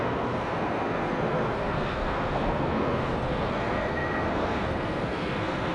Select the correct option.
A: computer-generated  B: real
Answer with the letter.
A